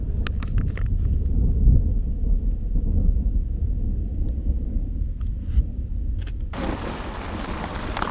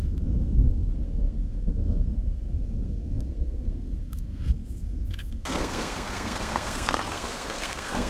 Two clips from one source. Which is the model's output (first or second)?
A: second